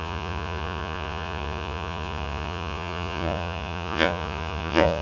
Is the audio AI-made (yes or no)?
yes